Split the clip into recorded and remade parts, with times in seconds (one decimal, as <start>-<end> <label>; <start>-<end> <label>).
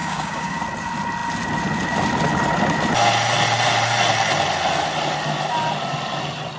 0.0-0.6 remade; 0.6-6.6 recorded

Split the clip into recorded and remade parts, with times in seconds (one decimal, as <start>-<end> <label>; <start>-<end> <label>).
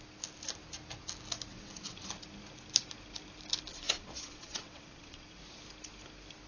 0.0-1.5 recorded; 1.5-2.1 remade; 2.1-3.7 recorded; 3.7-5.4 remade; 5.4-6.5 recorded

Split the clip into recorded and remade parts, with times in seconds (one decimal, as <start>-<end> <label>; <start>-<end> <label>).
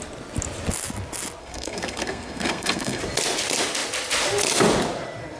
0.0-1.4 recorded; 1.4-3.0 remade; 3.0-5.4 recorded